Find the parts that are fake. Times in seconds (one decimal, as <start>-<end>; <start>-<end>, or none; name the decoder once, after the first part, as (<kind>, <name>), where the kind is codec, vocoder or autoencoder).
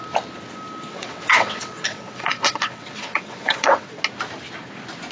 0.9-4.0 (vocoder, WaveNeXt)